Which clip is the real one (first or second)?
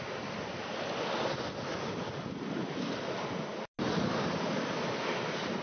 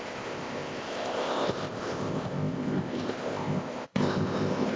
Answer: first